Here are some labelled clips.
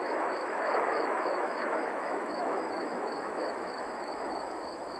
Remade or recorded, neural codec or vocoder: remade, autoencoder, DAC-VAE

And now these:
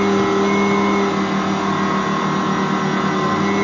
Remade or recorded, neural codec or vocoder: recorded